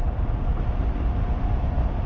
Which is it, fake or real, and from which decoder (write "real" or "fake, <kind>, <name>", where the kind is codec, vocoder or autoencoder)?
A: real